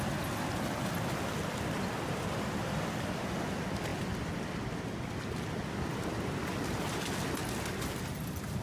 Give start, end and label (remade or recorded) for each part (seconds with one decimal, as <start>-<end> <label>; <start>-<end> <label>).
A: 0.0-8.6 recorded